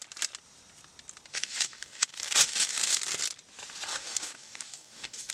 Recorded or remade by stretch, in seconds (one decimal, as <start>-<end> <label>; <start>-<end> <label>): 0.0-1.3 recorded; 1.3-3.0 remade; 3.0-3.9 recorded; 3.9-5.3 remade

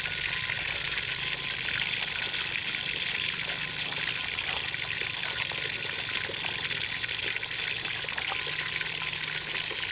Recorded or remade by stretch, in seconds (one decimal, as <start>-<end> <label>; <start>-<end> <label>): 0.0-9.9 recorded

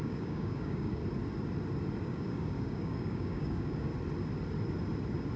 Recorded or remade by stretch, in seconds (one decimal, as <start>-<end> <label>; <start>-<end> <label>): 0.0-1.0 remade; 1.0-2.0 recorded; 2.0-3.9 remade; 3.9-5.4 recorded